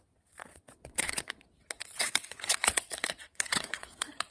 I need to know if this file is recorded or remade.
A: remade